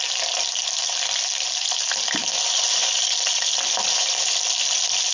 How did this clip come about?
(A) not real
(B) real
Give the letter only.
B